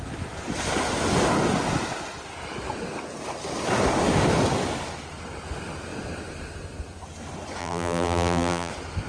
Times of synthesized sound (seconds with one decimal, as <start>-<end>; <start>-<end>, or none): 7.6-8.7